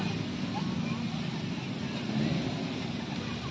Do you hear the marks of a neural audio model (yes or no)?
no